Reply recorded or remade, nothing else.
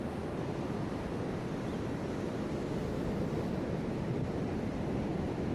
recorded